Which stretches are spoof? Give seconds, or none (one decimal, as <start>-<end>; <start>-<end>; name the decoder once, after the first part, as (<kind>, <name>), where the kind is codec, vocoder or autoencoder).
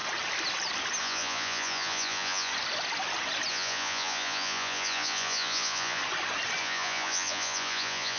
1.0-2.5 (vocoder, Vocos); 3.5-6.0; 6.6-8.2